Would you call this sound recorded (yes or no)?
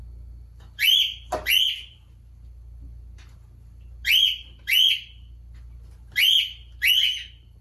yes